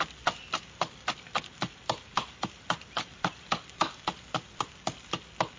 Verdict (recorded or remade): recorded